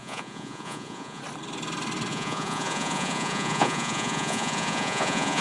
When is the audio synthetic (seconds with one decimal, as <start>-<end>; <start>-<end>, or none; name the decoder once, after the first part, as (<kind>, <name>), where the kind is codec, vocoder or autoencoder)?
0.0-1.2 (vocoder, Vocos); 2.1-5.4